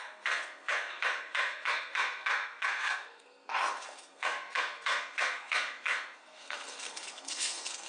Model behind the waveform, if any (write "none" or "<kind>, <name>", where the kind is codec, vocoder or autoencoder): codec, SNAC